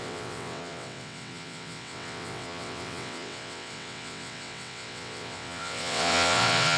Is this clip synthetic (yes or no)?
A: yes